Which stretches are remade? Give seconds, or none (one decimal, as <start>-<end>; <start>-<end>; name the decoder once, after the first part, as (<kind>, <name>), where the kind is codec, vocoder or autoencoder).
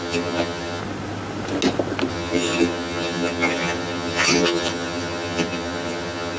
0.0-0.8 (vocoder, HiFi-GAN); 2.1-6.4